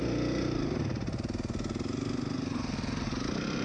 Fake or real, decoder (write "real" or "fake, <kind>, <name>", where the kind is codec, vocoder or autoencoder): real